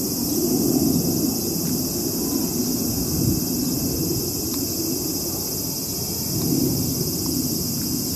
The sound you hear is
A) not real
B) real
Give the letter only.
B